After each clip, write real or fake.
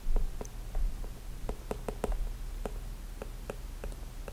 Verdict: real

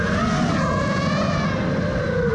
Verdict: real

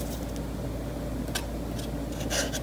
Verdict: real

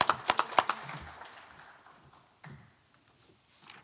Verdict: real